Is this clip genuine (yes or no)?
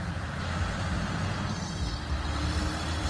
yes